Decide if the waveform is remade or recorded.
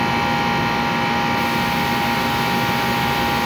recorded